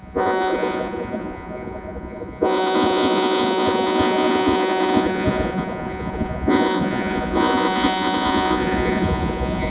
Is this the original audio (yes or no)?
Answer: no